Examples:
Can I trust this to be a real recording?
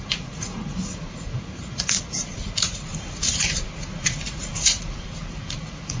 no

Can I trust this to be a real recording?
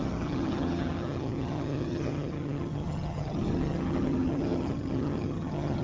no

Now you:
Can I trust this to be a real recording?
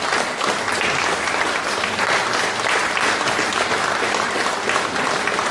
yes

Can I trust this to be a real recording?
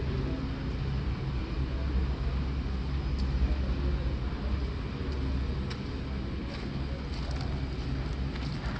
yes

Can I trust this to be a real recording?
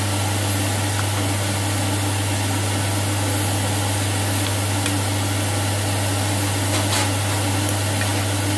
yes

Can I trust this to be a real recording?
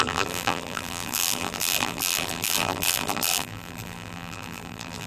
no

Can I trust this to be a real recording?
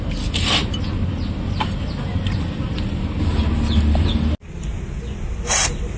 yes